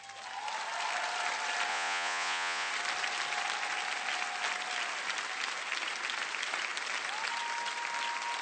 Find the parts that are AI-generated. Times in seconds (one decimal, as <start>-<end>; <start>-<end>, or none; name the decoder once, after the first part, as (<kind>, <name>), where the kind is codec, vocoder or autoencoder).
1.7-2.7 (vocoder, Vocos)